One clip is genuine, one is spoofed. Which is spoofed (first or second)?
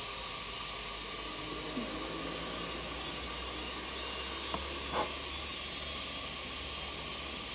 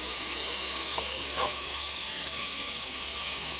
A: second